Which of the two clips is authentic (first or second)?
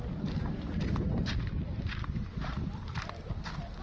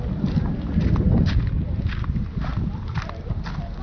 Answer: second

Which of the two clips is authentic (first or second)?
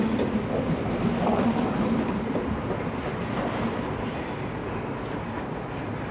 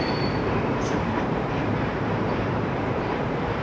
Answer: first